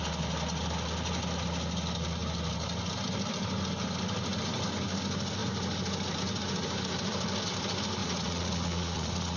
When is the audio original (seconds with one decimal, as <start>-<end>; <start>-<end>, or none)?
0.0-8.0

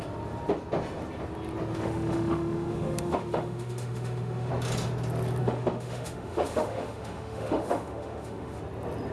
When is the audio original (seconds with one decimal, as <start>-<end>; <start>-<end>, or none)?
0.0-1.8; 4.5-5.4; 8.6-9.1

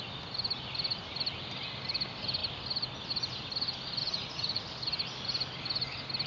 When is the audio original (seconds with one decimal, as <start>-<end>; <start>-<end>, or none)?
0.0-4.0; 4.6-6.3

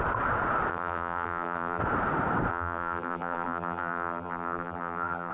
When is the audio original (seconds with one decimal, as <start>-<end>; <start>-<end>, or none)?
0.0-0.7; 1.8-2.5

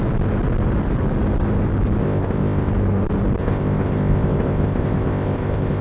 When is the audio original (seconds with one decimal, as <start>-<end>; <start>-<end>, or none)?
0.0-2.0; 2.7-3.4

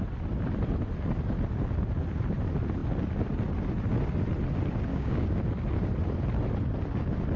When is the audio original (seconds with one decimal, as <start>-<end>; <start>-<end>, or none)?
0.0-4.9; 5.4-7.4

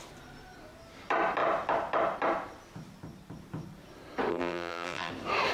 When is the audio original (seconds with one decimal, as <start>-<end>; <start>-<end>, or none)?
0.0-4.3; 5.1-5.5

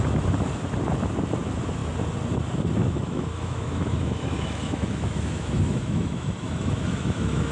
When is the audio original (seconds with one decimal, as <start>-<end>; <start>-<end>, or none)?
0.0-2.8